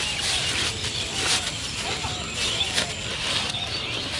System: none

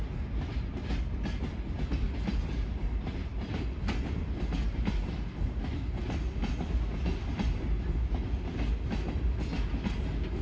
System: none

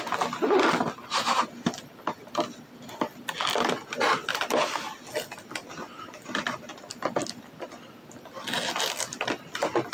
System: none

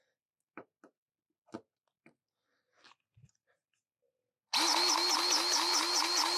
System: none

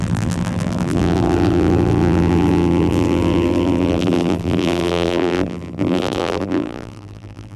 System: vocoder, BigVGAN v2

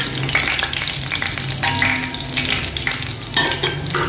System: none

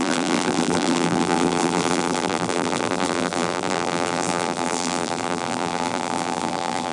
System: vocoder, BigVGAN v2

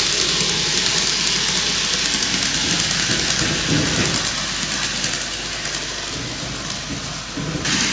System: none